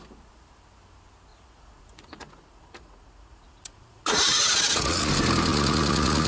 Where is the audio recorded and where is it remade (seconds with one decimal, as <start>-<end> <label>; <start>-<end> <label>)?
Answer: 0.0-1.3 recorded; 1.3-5.1 remade; 5.1-5.5 recorded; 5.5-6.3 remade